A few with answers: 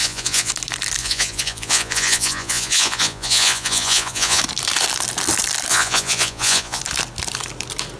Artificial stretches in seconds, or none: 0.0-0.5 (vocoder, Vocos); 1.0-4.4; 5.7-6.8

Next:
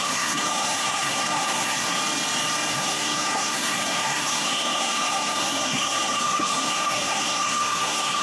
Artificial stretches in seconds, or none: 0.0-2.0 (codec, SNAC); 2.7-8.2

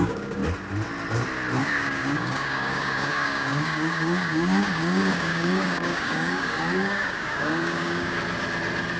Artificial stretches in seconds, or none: 0.0-0.4 (codec, DAC); 1.6-8.2

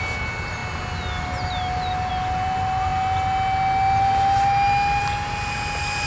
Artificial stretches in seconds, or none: none